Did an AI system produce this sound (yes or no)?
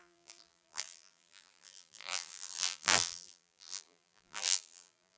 yes